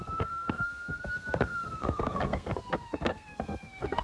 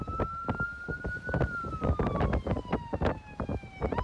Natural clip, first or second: second